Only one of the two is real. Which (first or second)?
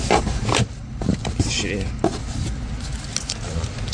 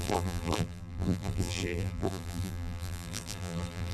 first